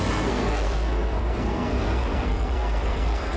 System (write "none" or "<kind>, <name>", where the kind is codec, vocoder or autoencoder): codec, SNAC